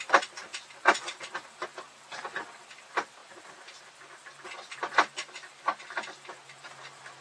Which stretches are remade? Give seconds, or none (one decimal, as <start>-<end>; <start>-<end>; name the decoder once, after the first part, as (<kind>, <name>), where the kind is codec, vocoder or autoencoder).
0.0-0.5 (vocoder, BigVGAN v2); 2.6-3.2; 6.6-7.2